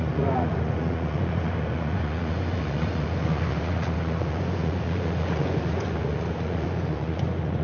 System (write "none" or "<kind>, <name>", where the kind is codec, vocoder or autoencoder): vocoder, Vocos